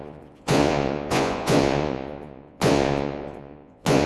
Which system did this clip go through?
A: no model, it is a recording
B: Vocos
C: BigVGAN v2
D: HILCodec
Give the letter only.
B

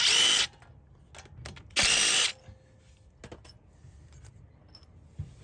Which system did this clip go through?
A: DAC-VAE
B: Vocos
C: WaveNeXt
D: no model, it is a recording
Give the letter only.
D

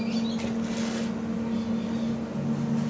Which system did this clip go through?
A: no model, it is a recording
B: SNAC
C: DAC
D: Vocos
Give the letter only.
A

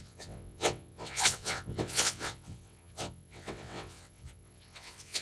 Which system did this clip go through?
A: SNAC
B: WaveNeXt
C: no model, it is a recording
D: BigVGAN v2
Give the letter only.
B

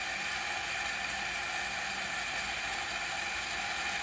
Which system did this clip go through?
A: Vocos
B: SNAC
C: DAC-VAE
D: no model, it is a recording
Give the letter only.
D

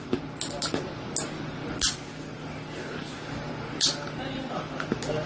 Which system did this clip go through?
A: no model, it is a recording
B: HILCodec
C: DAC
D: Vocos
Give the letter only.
A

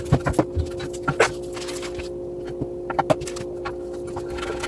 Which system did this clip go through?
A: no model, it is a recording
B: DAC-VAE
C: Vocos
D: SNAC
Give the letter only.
A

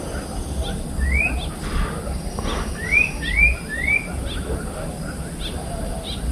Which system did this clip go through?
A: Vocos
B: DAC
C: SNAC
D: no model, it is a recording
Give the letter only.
D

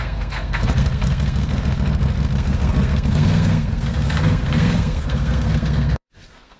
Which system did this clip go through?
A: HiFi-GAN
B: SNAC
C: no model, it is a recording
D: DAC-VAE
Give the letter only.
B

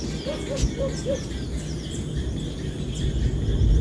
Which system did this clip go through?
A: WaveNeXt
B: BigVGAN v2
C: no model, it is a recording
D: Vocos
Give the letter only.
C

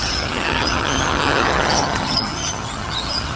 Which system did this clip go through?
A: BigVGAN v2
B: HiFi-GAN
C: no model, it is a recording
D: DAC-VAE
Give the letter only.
B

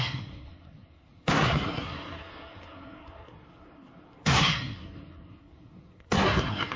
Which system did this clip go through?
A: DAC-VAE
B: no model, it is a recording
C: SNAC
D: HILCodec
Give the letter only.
C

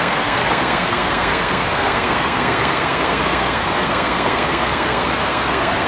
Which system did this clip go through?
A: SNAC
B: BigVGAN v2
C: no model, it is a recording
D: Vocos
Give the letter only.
A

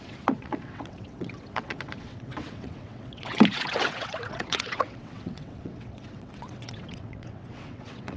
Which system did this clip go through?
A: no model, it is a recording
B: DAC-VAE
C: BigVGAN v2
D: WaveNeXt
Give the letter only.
D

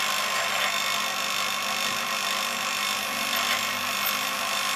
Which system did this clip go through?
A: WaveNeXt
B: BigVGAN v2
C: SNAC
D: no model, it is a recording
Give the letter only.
D